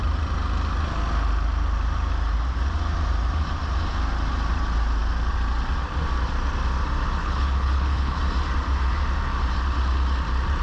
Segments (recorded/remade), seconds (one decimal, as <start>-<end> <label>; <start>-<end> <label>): 0.0-7.2 recorded; 7.2-8.2 remade; 8.2-10.6 recorded